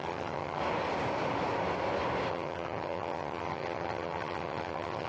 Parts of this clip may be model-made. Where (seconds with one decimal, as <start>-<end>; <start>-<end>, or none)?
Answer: 0.0-0.6; 2.3-5.1